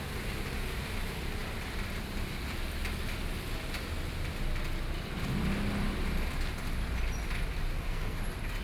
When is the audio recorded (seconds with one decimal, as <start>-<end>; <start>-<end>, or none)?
0.0-7.7; 8.2-8.6